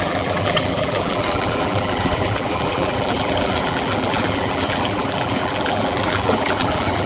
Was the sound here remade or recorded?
remade